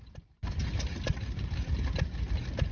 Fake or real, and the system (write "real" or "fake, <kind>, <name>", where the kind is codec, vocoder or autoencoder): real